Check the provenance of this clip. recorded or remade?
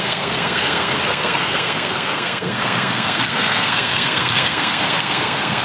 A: remade